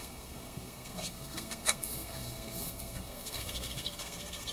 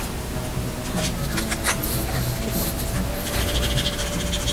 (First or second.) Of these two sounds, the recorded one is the second